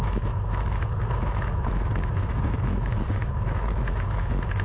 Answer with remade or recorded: remade